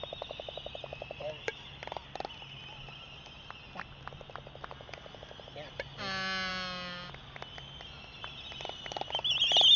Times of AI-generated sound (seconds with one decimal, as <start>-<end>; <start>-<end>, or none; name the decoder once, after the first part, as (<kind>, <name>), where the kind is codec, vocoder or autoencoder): none